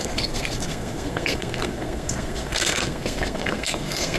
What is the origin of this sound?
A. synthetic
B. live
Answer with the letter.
A